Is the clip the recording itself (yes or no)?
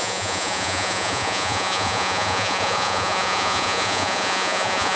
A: no